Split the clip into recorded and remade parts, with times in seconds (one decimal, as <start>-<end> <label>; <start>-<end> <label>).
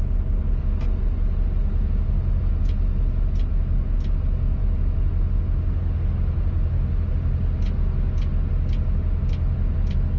0.0-10.2 recorded